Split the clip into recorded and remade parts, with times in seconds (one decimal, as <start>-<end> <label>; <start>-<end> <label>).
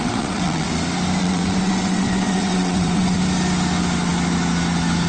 0.0-0.7 remade; 0.7-1.2 recorded; 1.2-3.2 remade; 3.2-5.1 recorded